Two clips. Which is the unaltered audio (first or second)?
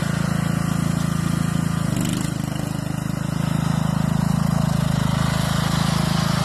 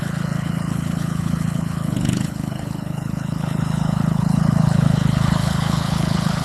first